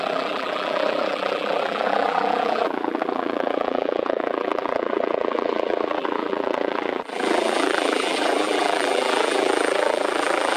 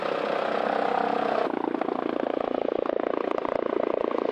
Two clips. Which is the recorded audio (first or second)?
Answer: second